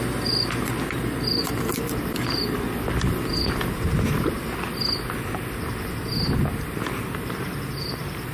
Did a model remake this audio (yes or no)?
no